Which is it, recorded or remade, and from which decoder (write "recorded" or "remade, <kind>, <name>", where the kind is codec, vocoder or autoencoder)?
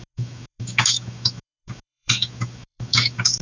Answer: remade, autoencoder, DAC-VAE